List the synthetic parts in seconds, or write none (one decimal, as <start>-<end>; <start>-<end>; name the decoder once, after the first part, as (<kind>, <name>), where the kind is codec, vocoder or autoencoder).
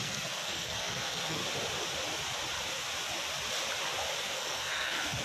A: 0.0-1.4 (codec, SNAC); 4.2-5.2